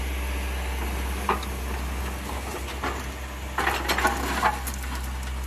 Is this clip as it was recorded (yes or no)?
yes